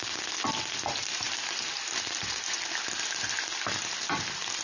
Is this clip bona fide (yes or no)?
no